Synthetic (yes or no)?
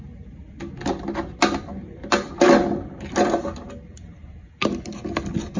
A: no